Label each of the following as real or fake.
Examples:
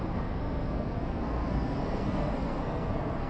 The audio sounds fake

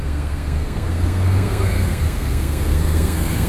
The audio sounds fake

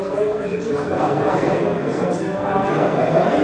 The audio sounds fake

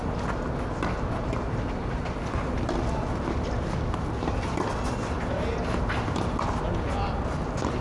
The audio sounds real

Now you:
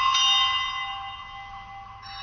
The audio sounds real